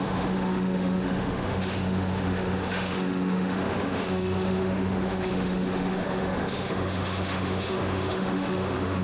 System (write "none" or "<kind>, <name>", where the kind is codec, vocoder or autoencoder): autoencoder, DAC-VAE